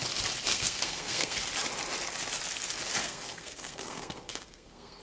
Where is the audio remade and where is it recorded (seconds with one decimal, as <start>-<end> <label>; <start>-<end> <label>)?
0.0-0.5 recorded; 0.5-1.4 remade; 1.4-3.0 recorded; 3.0-5.0 remade